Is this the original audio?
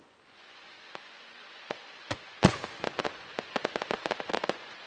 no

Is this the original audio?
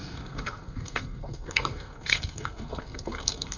no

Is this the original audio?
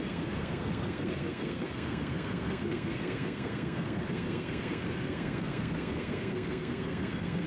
no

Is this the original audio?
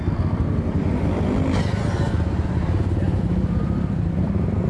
no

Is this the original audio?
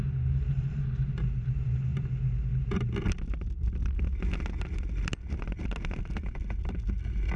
yes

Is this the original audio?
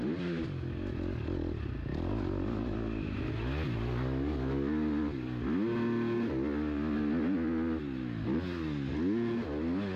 yes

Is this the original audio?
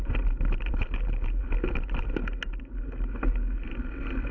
yes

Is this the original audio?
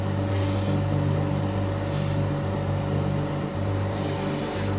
yes